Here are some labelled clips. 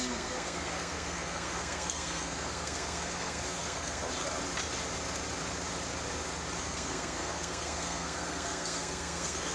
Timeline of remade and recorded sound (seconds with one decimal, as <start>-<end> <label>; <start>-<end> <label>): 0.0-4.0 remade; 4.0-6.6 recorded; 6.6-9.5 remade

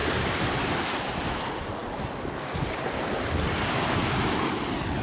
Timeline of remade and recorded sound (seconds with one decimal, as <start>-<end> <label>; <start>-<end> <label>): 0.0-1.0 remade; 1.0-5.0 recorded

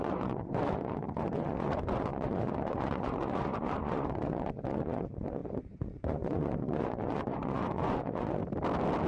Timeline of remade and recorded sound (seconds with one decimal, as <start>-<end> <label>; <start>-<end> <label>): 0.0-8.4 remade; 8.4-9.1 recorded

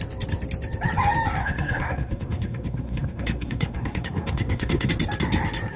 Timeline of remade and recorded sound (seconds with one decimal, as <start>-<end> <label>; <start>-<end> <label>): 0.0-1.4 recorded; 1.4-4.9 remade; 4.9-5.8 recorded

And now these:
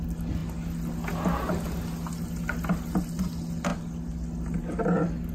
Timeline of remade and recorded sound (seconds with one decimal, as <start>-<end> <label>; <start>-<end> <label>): 0.0-5.3 recorded

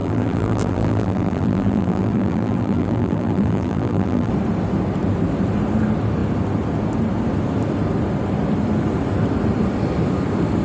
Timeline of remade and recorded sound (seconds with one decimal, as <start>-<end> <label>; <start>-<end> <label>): 0.0-4.3 remade; 4.3-10.6 recorded

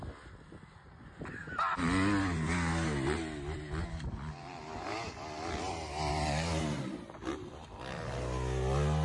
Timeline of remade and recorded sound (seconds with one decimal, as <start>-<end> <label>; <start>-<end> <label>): 0.0-9.0 recorded

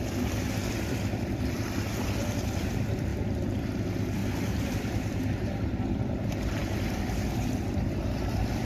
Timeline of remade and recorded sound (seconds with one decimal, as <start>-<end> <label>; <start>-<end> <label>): 0.0-3.1 remade; 3.1-3.6 recorded; 3.6-4.2 remade; 4.2-4.7 recorded; 4.7-8.6 remade